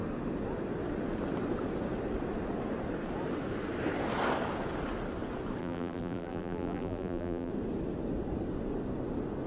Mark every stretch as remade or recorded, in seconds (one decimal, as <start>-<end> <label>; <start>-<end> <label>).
0.0-5.6 recorded; 5.6-7.5 remade; 7.5-9.5 recorded